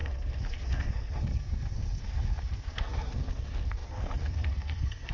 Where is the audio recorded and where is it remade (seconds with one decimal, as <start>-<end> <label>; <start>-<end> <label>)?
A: 0.0-5.1 remade